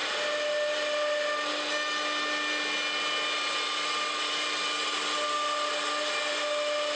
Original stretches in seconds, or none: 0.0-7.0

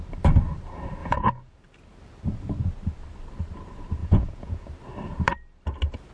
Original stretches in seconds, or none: 0.0-1.0; 1.6-4.0; 4.7-6.1

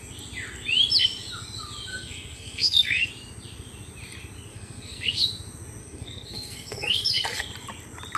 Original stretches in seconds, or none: 0.0-1.9; 3.1-4.5; 5.2-5.8; 7.5-8.2

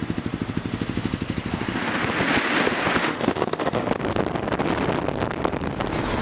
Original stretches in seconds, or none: 0.0-3.0; 3.9-6.2